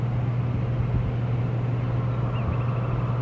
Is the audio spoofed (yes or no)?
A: no